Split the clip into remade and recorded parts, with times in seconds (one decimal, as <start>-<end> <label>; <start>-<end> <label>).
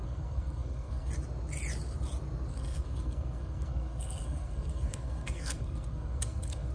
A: 0.0-1.1 remade; 1.1-2.5 recorded; 2.5-6.7 remade